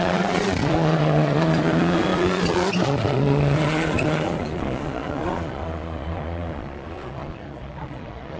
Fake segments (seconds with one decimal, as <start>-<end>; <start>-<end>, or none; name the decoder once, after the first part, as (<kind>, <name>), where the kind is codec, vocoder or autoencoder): 0.0-8.4 (vocoder, Vocos)